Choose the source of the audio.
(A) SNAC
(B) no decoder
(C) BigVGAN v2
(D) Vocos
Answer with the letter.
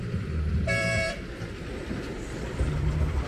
C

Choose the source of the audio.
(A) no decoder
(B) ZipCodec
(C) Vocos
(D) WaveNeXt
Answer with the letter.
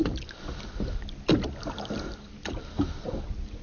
A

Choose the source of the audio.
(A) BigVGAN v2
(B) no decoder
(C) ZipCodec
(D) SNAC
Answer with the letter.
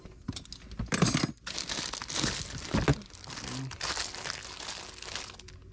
B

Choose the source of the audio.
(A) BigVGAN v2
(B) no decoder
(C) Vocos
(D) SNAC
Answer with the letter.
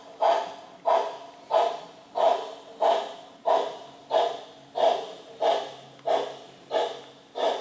B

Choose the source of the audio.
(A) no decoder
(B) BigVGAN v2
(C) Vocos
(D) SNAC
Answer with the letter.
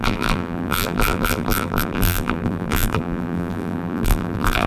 B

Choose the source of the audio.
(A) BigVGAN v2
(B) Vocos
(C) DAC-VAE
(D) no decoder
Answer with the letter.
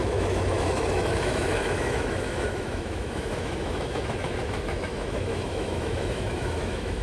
C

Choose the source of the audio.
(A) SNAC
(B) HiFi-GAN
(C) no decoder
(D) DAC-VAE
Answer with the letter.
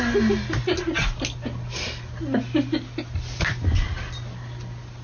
C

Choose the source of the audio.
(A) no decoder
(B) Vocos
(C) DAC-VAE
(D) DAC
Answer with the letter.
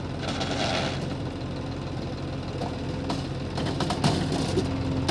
A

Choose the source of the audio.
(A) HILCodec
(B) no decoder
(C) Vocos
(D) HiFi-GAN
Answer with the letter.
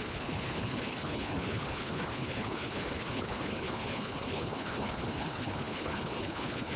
A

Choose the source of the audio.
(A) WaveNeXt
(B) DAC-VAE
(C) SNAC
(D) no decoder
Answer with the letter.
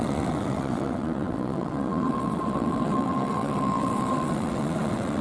A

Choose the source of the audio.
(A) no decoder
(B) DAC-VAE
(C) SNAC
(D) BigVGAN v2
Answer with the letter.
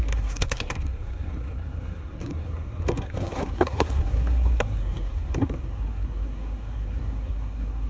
C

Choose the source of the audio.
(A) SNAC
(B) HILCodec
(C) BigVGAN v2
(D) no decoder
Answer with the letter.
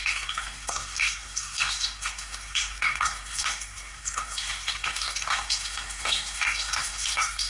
A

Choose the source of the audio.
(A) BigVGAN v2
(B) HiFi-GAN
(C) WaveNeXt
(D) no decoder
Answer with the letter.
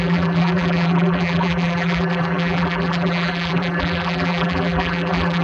A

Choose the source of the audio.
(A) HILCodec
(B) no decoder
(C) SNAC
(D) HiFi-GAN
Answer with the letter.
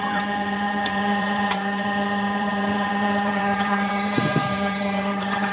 D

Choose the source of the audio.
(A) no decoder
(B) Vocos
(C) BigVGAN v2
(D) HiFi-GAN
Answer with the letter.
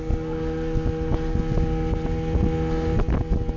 A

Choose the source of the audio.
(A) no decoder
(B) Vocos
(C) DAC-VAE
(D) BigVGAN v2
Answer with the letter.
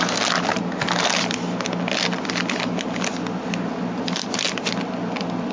A